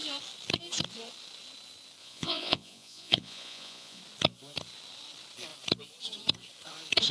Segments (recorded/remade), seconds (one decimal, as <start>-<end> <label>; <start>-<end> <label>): 0.0-2.0 recorded; 2.0-4.0 remade; 4.0-7.1 recorded